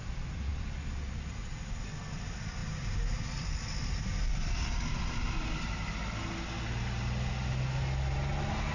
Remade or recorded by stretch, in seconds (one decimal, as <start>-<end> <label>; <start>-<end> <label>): 0.0-8.7 recorded